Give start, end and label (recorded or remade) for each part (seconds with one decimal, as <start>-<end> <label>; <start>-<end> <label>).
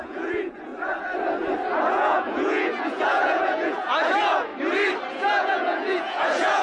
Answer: 0.0-0.7 remade; 0.7-1.9 recorded; 1.9-4.5 remade; 4.5-5.1 recorded; 5.1-6.6 remade